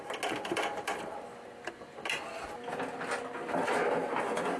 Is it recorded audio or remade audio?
recorded